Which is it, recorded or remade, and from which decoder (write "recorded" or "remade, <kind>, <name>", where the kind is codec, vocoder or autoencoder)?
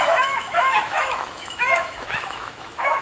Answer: remade, autoencoder, DAC-VAE